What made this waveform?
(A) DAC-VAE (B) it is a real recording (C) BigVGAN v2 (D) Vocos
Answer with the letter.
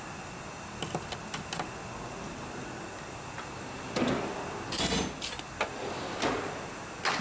B